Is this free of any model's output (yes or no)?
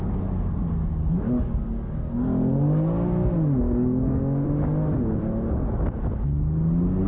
yes